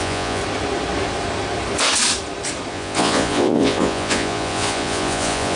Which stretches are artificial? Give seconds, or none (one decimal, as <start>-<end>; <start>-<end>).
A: 0.0-0.4; 2.7-5.6